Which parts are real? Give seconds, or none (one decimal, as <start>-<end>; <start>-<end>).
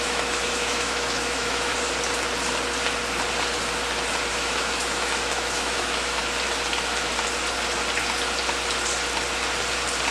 1.7-4.3; 6.2-10.1